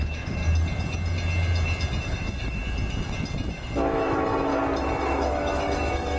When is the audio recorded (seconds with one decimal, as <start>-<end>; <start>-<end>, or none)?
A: 0.4-2.0; 2.6-3.5; 4.5-5.1